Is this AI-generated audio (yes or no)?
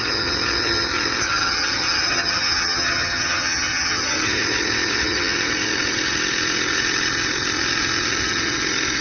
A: yes